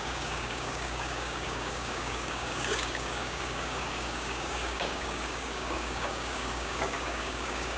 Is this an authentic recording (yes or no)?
no